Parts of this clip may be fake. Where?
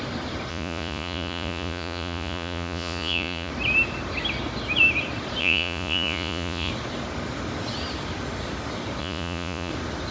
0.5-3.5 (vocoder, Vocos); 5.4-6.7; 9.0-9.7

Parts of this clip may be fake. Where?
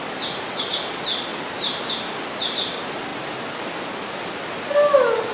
none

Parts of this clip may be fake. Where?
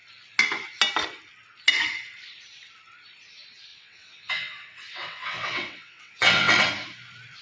3.7-6.7 (vocoder, WaveNeXt)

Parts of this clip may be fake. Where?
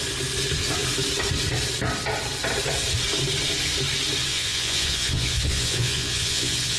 4.3-6.8 (vocoder, Vocos)